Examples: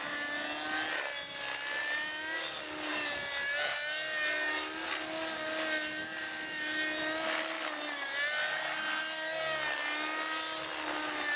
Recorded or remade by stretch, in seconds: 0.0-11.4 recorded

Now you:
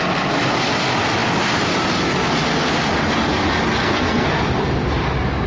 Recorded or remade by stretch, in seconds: 0.0-3.8 recorded; 3.8-4.4 remade; 4.4-5.5 recorded

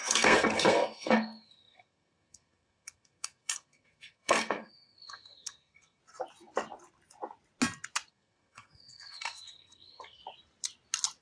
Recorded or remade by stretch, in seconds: 0.0-6.0 remade; 6.0-8.1 recorded; 8.1-10.2 remade; 10.2-11.2 recorded

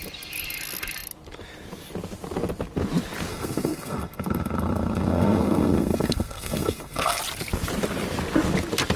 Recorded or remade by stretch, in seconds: 0.0-3.3 recorded; 3.3-7.2 remade; 7.2-9.0 recorded

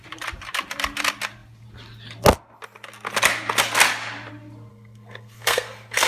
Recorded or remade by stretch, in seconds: 0.0-4.7 recorded; 4.7-6.1 remade